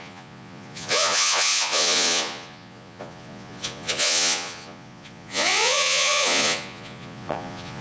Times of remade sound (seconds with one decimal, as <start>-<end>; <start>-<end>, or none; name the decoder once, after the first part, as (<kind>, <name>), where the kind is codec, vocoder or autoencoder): 0.0-7.8 (vocoder, Vocos)